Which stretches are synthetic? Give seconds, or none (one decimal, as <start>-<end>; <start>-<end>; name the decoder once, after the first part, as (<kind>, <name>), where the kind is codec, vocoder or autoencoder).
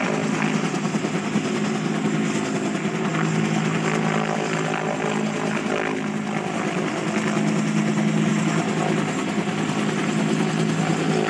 none